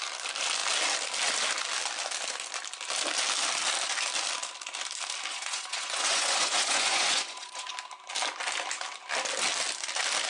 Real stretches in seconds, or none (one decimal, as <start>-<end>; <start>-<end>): 0.0-5.3; 7.7-10.3